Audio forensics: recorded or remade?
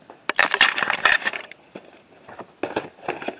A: recorded